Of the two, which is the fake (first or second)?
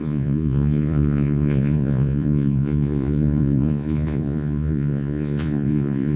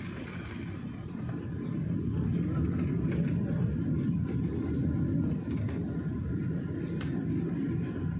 first